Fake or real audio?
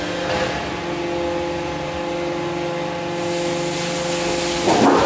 real